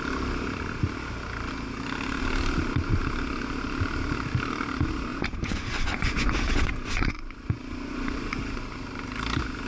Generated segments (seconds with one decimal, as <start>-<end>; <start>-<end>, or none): 5.1-8.4